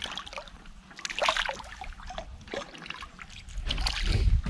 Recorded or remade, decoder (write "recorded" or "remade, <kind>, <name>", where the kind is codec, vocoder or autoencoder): recorded